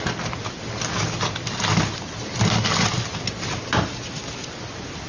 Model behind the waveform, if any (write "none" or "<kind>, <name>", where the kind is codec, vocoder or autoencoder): none